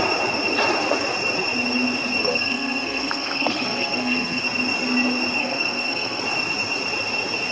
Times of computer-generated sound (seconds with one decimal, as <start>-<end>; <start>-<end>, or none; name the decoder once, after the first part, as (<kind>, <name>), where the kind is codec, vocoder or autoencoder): 2.2-4.4 (codec, SNAC); 5.4-6.2